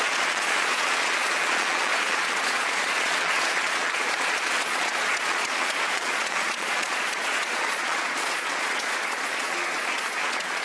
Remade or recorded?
remade